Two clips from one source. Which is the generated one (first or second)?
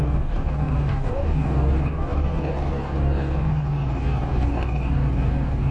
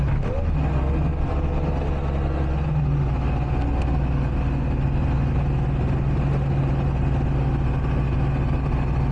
first